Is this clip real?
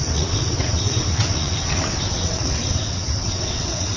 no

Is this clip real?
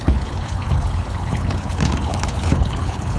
no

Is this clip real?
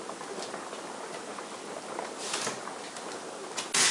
yes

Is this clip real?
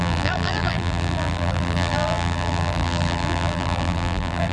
no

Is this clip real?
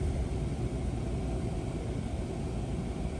yes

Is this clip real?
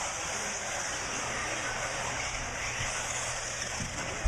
yes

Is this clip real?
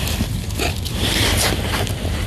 no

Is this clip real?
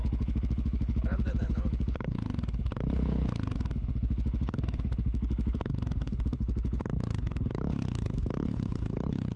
no